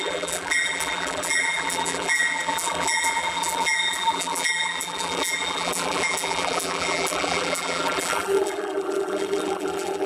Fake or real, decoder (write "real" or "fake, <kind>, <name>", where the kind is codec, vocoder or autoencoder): fake, vocoder, BigVGAN v2